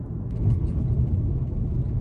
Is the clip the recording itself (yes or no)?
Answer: yes